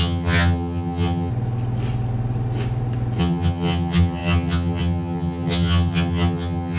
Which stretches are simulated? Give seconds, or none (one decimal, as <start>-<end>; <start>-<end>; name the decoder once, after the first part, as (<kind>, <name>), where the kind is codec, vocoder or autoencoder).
0.0-1.3 (vocoder, HiFi-GAN); 3.2-6.8